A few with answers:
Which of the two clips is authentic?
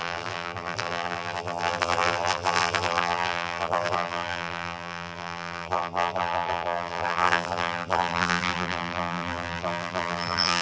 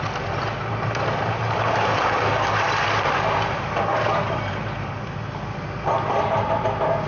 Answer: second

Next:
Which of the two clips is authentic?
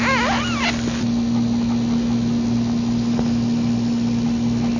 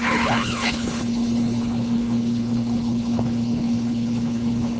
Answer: first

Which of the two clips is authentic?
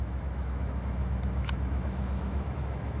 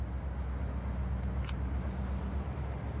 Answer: second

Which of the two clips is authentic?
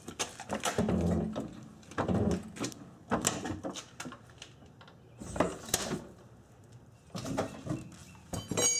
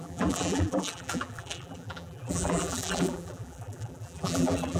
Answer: first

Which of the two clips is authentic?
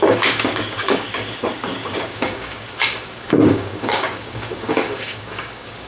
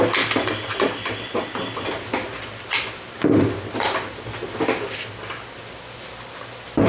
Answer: second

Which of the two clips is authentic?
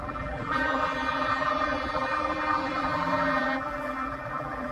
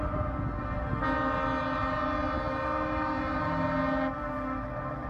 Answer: second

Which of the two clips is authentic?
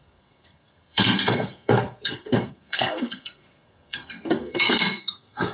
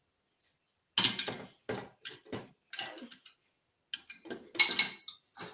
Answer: second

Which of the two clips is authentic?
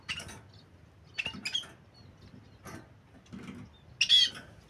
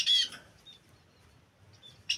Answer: first